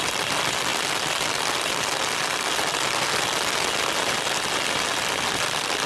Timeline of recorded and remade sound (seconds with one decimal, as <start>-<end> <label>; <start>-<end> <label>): 0.0-5.9 recorded